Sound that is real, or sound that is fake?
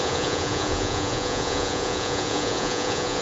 fake